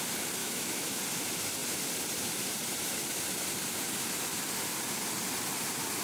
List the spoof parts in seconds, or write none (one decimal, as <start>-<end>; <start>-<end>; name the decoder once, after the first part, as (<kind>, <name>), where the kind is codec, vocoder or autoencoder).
0.4-1.0 (autoencoder, DAC-VAE)